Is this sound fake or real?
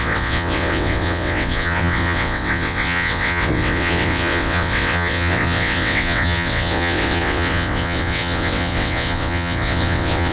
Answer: fake